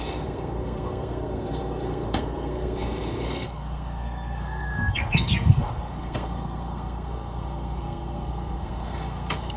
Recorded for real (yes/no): no